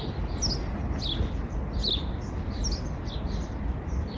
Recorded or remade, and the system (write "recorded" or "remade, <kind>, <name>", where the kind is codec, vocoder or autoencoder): recorded